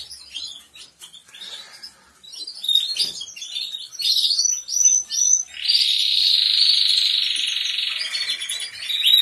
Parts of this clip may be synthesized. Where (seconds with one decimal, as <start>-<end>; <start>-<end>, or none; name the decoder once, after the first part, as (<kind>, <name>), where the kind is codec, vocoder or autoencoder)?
2.3-4.4 (vocoder, BigVGAN v2)